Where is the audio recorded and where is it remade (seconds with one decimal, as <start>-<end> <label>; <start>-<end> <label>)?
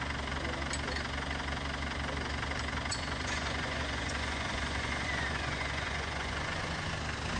0.0-2.9 recorded; 2.9-6.9 remade; 6.9-7.4 recorded